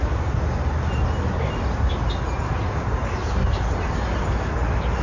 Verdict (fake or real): real